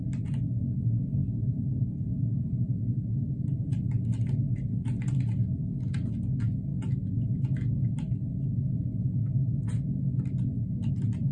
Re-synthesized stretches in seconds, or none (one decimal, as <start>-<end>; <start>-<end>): none